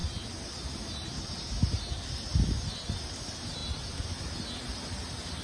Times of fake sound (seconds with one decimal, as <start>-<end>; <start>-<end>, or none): none